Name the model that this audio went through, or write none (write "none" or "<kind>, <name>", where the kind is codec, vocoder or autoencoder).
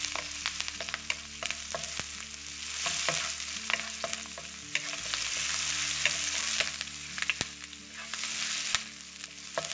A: none